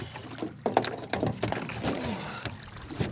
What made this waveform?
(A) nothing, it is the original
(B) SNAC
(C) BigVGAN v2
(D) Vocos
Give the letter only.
A